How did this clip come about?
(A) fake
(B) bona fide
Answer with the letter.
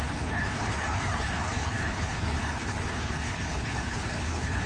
A